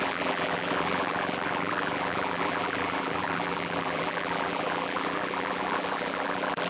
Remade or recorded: remade